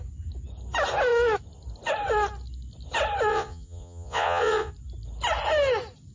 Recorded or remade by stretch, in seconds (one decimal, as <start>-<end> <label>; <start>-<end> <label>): 0.0-3.3 recorded; 3.3-4.7 remade; 4.7-6.1 recorded